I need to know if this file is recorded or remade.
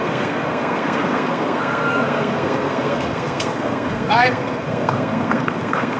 remade